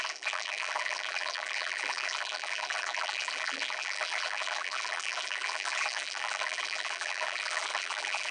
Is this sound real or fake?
fake